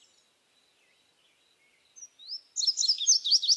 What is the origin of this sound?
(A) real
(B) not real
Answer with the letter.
A